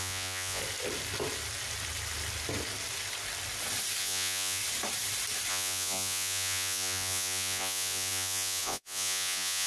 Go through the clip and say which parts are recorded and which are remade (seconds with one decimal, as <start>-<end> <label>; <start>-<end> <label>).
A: 0.0-0.6 remade; 0.6-4.0 recorded; 4.0-4.6 remade; 4.6-5.5 recorded; 5.5-9.7 remade

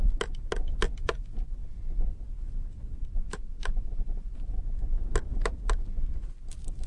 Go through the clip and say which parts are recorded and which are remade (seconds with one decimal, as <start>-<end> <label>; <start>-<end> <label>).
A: 0.0-3.0 recorded; 3.0-4.6 remade; 4.6-6.9 recorded